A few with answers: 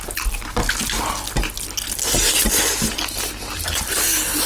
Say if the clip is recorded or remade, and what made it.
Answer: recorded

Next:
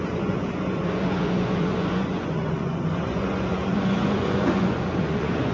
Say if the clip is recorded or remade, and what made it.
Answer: remade, vocoder, Vocos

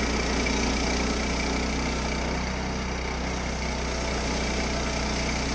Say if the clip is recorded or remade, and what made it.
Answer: recorded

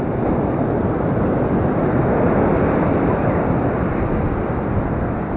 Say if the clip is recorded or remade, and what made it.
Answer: recorded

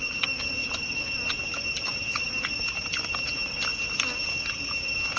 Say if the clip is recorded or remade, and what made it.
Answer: recorded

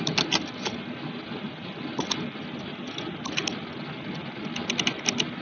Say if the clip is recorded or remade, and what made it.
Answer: recorded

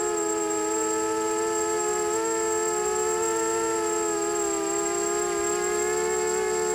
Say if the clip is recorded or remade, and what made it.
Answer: recorded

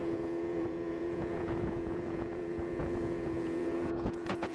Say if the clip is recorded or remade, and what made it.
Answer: remade, vocoder, Vocos